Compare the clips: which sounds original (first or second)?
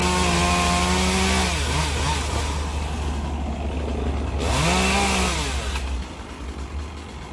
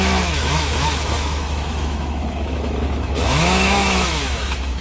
first